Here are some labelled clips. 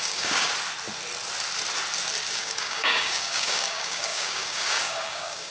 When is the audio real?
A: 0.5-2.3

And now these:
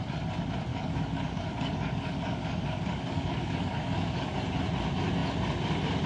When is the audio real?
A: 0.0-0.7; 4.4-6.1

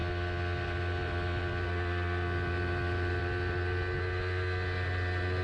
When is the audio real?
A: 0.0-5.4

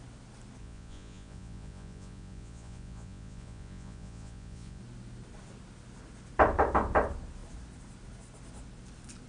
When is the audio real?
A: 0.0-0.6; 4.8-9.3

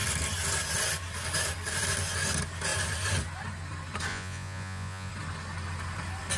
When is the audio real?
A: 0.0-4.1; 5.1-6.4

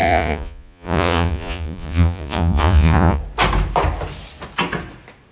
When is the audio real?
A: 3.2-5.3

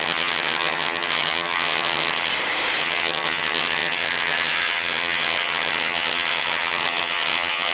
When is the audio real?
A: 2.3-2.8